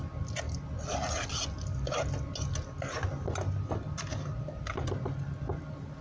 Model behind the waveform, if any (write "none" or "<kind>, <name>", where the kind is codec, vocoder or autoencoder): none